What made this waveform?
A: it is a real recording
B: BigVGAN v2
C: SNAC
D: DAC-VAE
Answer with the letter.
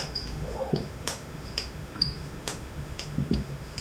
D